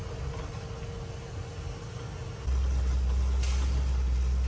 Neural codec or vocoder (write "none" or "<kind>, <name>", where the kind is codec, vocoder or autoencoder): none